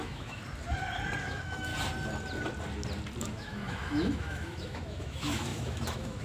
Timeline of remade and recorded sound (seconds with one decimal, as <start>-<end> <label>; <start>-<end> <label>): 0.0-0.4 remade; 0.4-1.2 recorded; 1.2-1.7 remade; 1.7-3.2 recorded; 3.2-6.2 remade